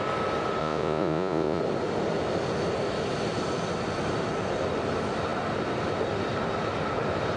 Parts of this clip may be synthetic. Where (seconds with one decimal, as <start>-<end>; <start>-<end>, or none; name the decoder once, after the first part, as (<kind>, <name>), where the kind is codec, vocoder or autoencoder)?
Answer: 0.6-1.6 (vocoder, Vocos)